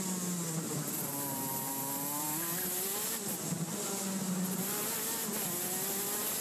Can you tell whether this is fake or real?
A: real